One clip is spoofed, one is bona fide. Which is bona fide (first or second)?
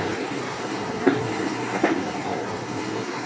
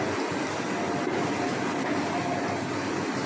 second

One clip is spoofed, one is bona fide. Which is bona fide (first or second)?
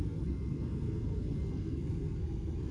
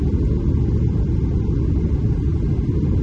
second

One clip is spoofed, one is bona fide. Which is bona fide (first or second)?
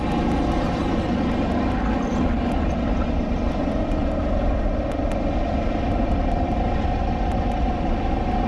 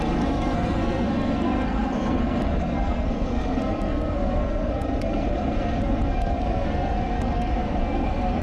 first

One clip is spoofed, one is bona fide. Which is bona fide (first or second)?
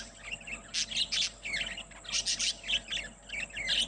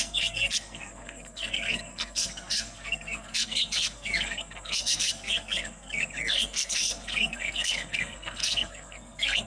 first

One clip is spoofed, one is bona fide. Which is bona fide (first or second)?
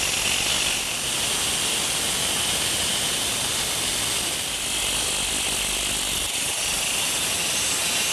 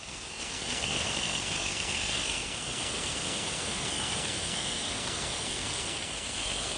first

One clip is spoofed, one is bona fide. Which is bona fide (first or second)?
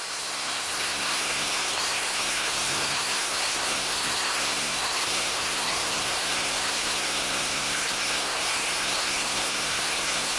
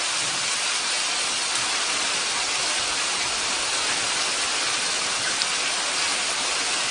second